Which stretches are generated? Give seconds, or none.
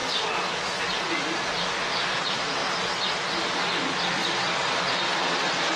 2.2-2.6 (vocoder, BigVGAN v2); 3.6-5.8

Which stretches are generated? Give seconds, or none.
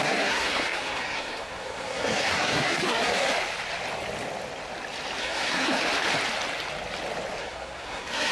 0.0-3.3 (codec, SNAC); 5.2-5.8; 7.4-8.3